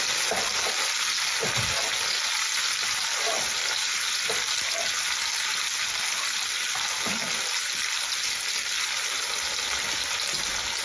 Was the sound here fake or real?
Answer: real